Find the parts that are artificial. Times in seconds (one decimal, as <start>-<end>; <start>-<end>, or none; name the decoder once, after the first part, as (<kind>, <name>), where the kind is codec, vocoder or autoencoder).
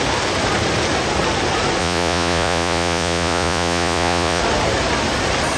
1.8-4.4 (vocoder, Vocos)